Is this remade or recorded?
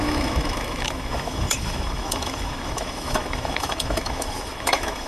remade